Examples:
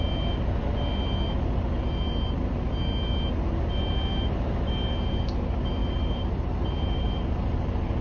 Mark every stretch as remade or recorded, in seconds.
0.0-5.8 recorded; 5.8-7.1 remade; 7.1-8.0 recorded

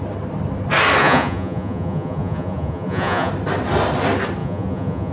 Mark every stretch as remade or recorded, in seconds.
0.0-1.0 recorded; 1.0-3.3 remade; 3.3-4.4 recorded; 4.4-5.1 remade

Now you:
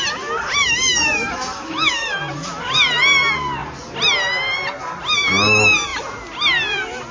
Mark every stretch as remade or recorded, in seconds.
0.0-0.6 recorded; 0.6-2.2 remade; 2.2-7.1 recorded

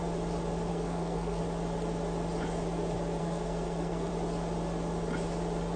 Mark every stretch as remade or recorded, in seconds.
0.0-0.7 recorded; 0.7-1.4 remade; 1.4-3.2 recorded; 3.2-4.1 remade; 4.1-5.8 recorded

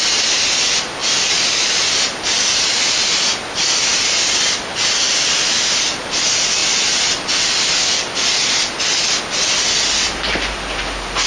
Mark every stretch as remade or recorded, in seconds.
0.0-6.6 recorded; 6.6-9.2 remade; 9.2-11.3 recorded